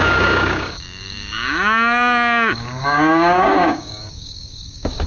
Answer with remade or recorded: remade